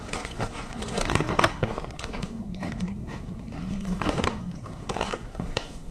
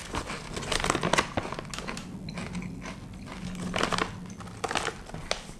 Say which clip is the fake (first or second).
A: first